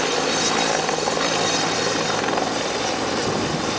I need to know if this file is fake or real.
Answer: fake